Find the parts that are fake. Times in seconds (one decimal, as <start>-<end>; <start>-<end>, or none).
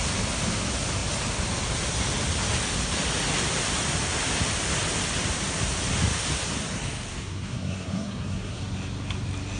7.1-8.6